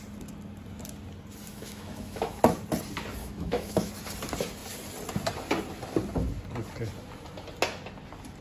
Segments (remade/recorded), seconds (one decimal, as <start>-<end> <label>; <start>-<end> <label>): 0.0-1.5 recorded; 1.5-2.4 remade; 2.4-3.2 recorded; 3.2-3.9 remade; 3.9-8.4 recorded